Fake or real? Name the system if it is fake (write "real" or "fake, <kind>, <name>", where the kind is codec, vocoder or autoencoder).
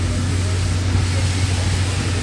real